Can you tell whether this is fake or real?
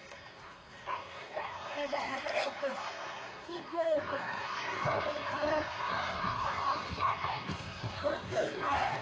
fake